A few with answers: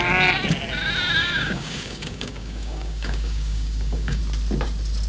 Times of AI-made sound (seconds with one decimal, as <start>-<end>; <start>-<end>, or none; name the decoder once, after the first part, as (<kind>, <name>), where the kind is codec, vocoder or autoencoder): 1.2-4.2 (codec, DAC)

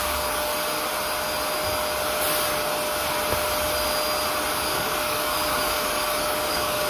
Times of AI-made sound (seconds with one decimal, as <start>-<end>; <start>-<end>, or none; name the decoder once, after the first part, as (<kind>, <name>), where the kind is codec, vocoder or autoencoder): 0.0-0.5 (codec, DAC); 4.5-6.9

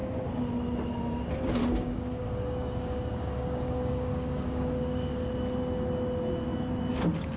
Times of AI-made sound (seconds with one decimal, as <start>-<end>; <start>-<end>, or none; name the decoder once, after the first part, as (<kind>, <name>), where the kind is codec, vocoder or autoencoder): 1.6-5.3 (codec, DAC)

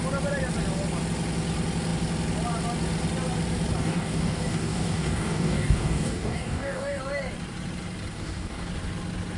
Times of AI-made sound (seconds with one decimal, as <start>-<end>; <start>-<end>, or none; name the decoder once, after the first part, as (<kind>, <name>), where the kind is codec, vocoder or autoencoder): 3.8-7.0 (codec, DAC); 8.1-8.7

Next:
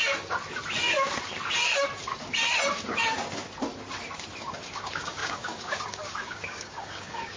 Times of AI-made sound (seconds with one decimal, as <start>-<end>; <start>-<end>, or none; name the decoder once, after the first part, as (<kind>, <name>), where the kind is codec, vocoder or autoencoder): 4.4-7.4 (codec, DAC)

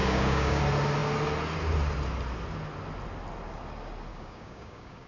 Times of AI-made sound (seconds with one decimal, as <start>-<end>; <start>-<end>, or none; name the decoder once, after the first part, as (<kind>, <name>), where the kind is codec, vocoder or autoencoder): 0.0-0.6 (codec, DAC); 4.1-5.1